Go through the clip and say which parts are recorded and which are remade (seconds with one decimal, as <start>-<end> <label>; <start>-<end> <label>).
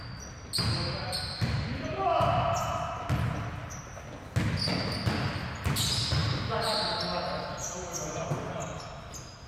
0.0-9.5 recorded